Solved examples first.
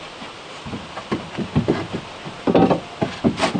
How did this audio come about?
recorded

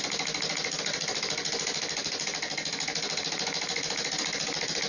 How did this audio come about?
recorded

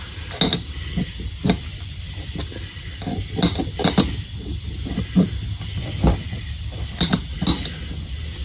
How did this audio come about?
recorded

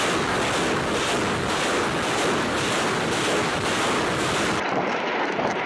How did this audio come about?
recorded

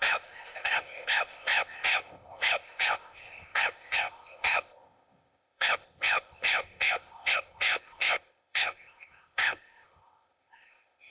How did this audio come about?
remade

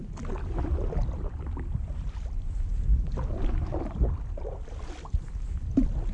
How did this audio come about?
recorded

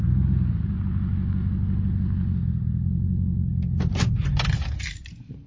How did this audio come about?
recorded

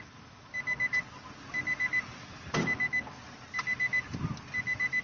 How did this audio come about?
recorded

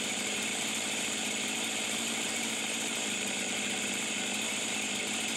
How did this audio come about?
remade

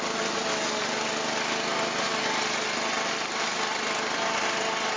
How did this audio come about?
recorded